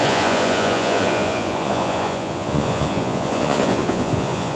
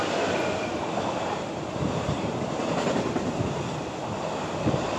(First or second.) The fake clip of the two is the first